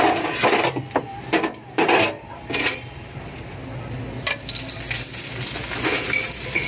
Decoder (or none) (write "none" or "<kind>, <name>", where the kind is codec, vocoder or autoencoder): none